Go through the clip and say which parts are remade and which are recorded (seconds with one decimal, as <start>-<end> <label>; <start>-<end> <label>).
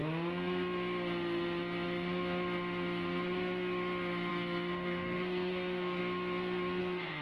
0.0-4.3 recorded; 4.3-6.0 remade; 6.0-6.8 recorded; 6.8-7.2 remade